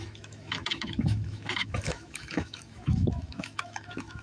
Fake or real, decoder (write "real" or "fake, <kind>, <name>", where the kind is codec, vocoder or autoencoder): fake, autoencoder, DAC-VAE